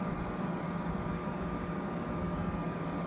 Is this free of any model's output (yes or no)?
no